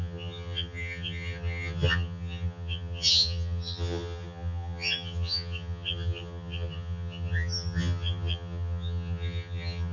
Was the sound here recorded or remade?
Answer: remade